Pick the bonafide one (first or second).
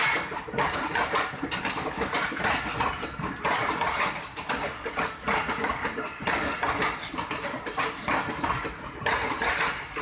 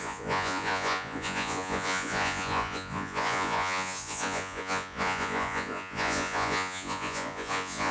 first